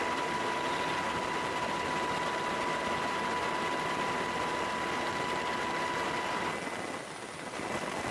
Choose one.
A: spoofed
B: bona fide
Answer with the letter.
B